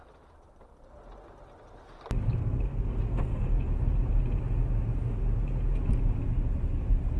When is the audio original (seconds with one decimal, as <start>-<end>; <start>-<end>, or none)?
0.0-2.4; 3.6-7.2